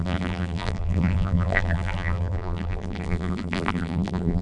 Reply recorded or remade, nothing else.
remade